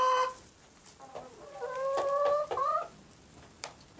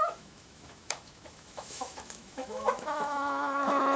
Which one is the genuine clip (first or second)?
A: first